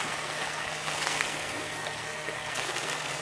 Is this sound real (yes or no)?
no